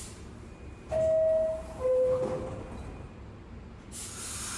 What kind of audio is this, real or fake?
real